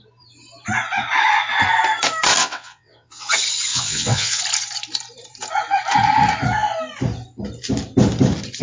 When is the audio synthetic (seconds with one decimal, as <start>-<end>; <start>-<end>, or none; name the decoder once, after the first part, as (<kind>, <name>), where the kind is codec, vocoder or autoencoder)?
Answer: 2.4-3.3 (vocoder, WaveNeXt); 3.7-4.4